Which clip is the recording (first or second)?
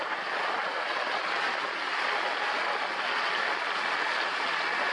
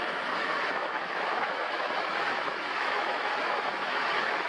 first